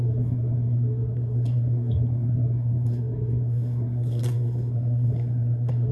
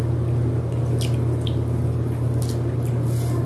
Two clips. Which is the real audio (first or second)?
second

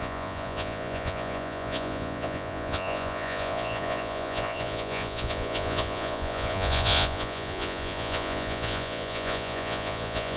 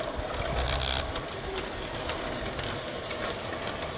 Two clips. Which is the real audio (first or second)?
second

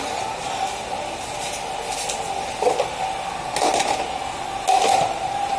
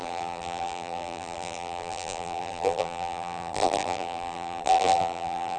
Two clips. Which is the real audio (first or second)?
first